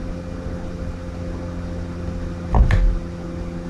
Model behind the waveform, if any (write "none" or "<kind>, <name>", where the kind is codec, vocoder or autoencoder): none